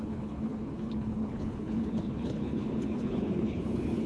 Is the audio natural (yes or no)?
no